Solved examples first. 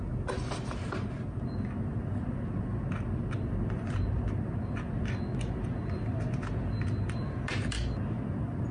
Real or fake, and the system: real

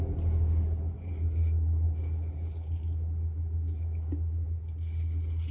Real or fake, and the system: real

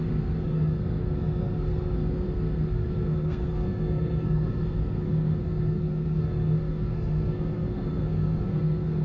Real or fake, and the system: fake, codec, SNAC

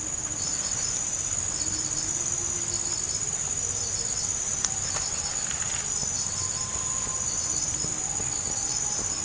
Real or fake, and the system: real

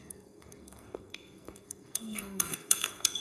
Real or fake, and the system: fake, codec, SNAC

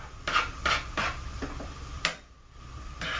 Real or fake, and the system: real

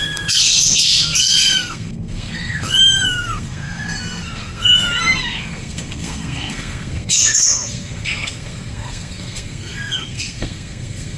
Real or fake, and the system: fake, codec, SNAC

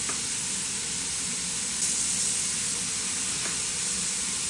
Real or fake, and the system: real